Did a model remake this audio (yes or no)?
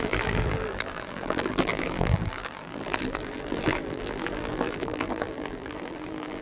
yes